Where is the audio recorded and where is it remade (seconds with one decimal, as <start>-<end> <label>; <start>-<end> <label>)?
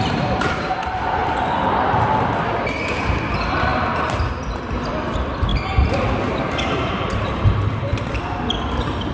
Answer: 0.0-1.2 remade; 1.2-2.5 recorded; 2.5-3.7 remade; 3.7-4.9 recorded; 4.9-5.5 remade; 5.5-6.3 recorded; 6.3-9.1 remade